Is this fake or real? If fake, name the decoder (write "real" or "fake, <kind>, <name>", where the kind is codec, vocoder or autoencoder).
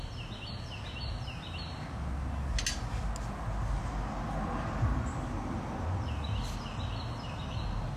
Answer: real